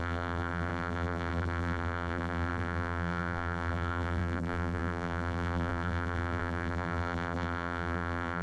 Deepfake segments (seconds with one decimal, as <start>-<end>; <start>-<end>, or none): 0.0-8.4